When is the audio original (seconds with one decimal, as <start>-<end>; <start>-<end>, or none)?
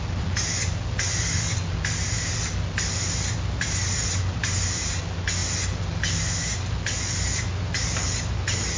0.0-8.8